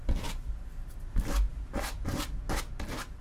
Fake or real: real